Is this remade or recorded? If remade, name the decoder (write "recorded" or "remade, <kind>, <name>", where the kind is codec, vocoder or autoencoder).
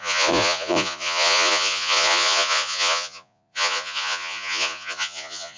remade, vocoder, Vocos